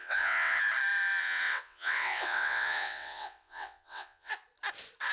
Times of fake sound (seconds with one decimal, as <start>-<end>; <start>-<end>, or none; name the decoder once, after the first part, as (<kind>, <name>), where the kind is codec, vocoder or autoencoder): 0.0-0.6 (vocoder, WaveNeXt); 1.2-4.3